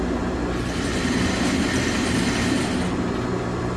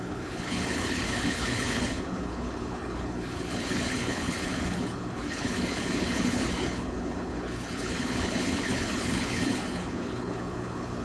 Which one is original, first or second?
first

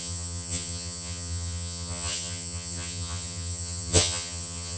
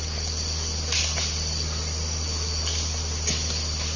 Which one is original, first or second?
second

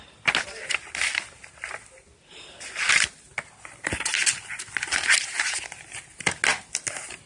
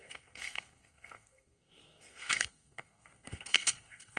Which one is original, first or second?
first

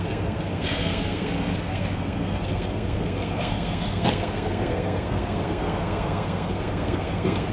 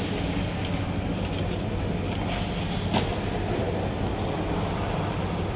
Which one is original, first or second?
second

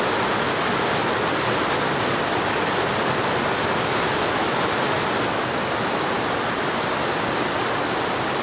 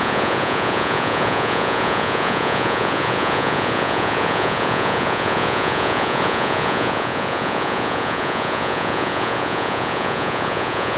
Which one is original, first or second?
first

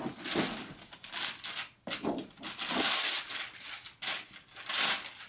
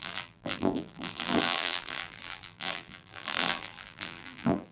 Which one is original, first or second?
first